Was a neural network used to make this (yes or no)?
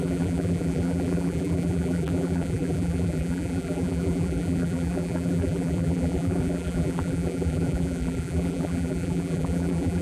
yes